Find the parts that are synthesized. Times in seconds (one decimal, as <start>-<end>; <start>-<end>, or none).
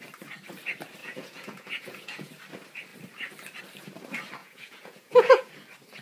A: 1.0-2.3; 4.4-5.5